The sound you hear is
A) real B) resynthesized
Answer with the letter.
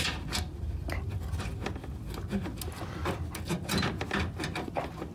A